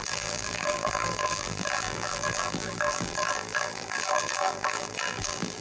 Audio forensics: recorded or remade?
remade